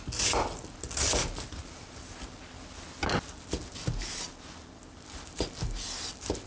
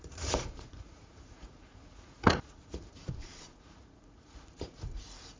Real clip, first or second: first